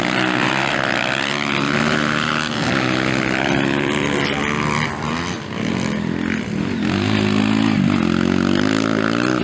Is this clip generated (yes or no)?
no